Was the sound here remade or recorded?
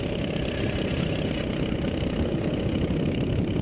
recorded